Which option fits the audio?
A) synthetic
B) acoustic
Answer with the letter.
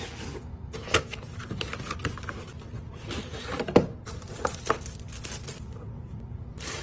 B